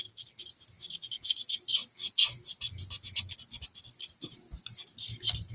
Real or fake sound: real